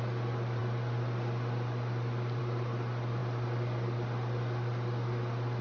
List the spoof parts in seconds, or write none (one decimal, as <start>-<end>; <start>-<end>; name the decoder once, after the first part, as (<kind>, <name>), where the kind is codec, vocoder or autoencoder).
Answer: none